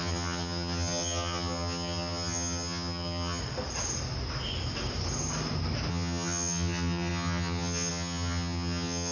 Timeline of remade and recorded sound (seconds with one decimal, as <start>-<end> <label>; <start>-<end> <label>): 0.0-3.4 remade; 3.4-5.9 recorded; 5.9-9.1 remade